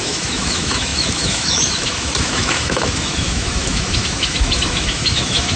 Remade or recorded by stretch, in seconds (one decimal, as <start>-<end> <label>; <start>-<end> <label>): 0.0-5.6 remade